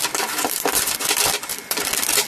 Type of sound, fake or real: fake